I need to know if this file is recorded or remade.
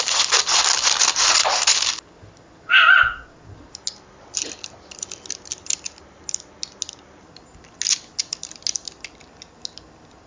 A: recorded